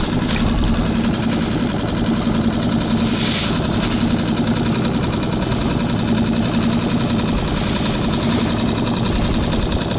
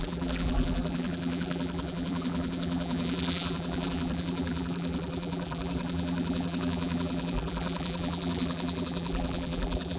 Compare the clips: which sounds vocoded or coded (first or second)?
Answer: second